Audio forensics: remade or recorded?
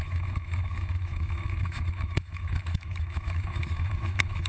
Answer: remade